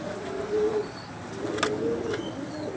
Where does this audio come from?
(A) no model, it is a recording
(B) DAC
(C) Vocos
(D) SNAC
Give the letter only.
A